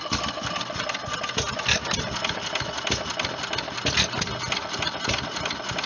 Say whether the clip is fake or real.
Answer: real